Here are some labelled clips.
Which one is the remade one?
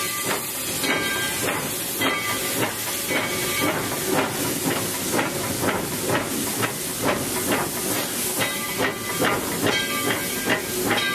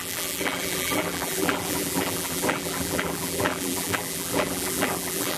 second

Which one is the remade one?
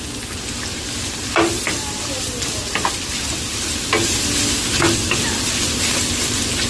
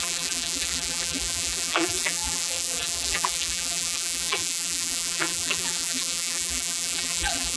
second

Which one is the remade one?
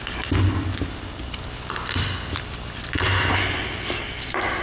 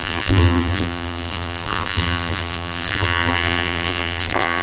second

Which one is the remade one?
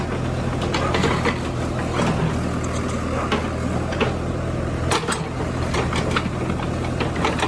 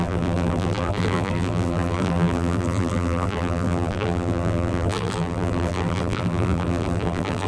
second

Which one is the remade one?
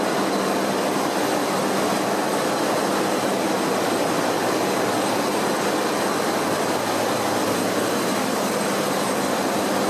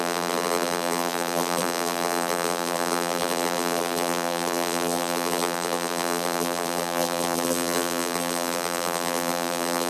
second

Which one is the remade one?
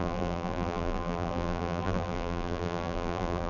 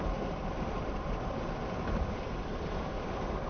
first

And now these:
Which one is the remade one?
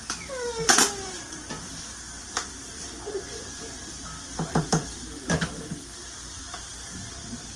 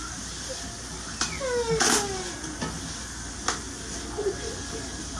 first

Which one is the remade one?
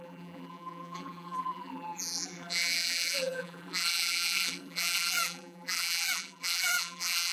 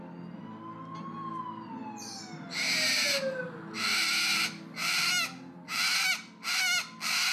first